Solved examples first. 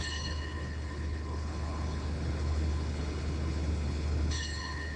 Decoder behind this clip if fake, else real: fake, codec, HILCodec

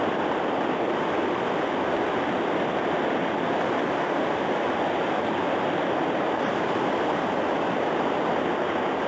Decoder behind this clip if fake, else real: real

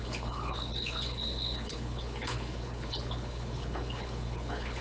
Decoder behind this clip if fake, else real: fake, codec, HILCodec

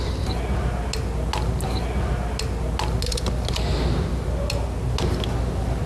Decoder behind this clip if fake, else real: real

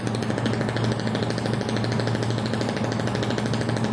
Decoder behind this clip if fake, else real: real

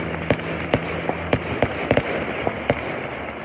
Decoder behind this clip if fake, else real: real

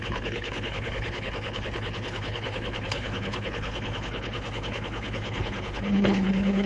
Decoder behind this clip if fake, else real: fake, codec, HILCodec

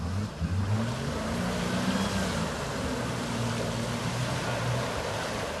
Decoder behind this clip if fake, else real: real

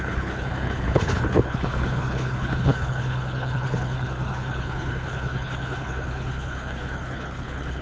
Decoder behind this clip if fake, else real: fake, codec, HILCodec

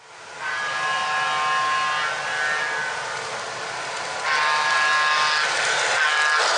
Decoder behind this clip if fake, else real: real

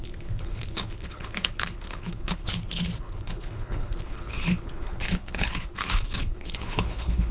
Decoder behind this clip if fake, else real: fake, codec, HILCodec